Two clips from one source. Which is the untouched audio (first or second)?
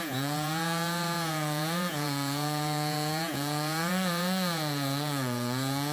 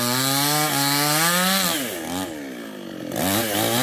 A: second